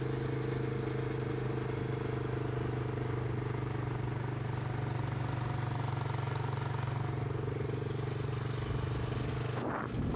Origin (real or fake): real